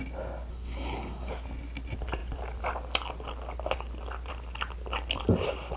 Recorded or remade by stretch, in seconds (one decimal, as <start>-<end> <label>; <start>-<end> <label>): 0.0-0.5 recorded; 0.5-1.3 remade; 1.3-5.8 recorded